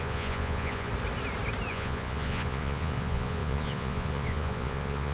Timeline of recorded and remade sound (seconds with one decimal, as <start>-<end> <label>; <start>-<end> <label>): 0.0-0.9 remade; 0.9-1.7 recorded; 1.7-5.1 remade